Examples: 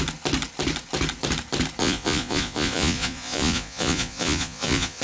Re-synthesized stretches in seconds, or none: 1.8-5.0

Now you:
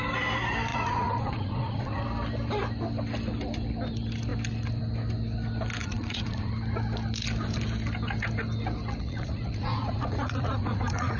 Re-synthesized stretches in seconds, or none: 0.7-2.0; 5.8-6.5; 9.0-11.2

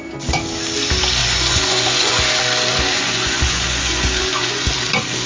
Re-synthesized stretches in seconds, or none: 1.2-2.3; 2.7-4.7

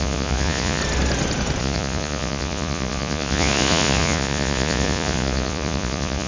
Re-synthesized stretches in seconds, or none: 0.0-0.8; 1.6-6.3